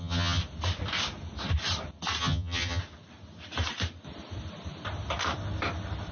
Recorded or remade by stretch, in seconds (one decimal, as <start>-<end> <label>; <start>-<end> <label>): 0.0-0.4 remade; 0.4-2.2 recorded; 2.2-2.8 remade; 2.8-6.1 recorded